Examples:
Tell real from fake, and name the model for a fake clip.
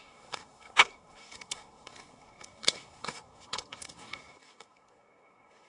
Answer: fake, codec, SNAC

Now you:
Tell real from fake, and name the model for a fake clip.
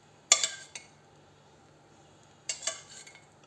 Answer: real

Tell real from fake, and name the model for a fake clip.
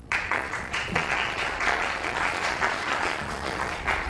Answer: fake, vocoder, Vocos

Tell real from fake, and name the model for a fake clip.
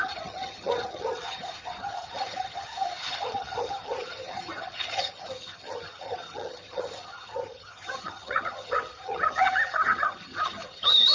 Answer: fake, vocoder, HiFi-GAN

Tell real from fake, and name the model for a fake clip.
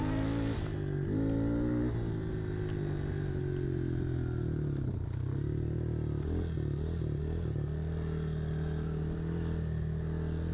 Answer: real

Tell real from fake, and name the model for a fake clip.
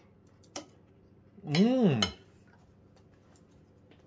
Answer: real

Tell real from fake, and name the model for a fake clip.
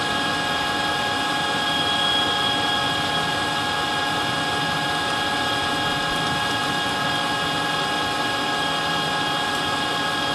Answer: real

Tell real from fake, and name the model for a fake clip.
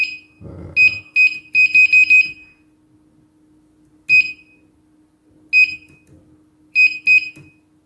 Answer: real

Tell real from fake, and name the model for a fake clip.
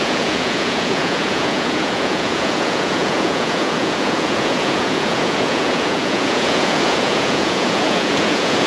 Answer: fake, vocoder, Vocos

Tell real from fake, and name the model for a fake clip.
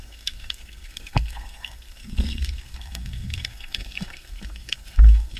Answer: fake, codec, SNAC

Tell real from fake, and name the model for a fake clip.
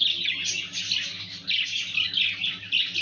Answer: real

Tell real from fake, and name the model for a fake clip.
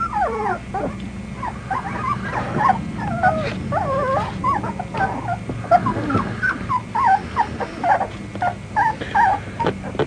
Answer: real